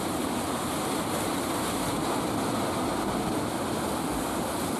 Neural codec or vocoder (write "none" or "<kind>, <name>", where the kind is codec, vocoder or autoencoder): none